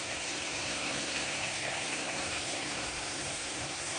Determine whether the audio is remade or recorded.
remade